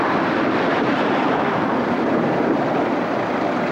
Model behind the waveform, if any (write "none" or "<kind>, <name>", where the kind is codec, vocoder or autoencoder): vocoder, BigVGAN v2